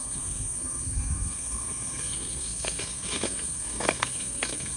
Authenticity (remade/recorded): remade